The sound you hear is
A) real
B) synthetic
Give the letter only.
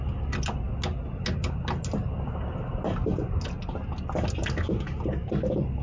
A